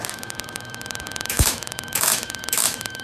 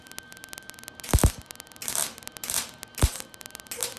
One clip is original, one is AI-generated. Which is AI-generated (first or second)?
first